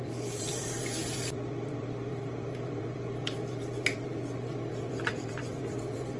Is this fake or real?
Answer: fake